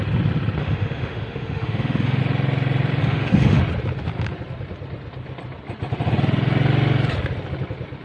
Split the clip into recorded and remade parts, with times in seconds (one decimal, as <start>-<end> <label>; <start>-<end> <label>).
0.0-0.6 recorded; 0.6-2.2 remade; 2.2-3.0 recorded; 3.0-3.6 remade; 3.6-8.0 recorded